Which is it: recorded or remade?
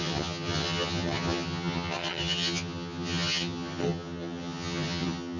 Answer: remade